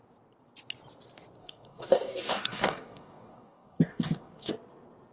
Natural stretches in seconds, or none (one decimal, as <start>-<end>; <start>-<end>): 0.0-1.4; 4.5-5.1